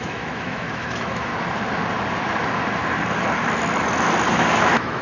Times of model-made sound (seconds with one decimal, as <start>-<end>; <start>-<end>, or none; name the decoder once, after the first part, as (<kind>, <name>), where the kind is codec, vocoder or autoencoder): 0.0-1.3 (autoencoder, DAC-VAE); 4.3-5.0